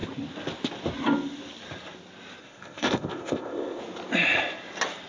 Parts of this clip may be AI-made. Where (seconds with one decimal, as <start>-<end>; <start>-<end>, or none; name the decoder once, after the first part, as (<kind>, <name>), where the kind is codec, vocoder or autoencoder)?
2.4-3.8 (codec, ZipCodec)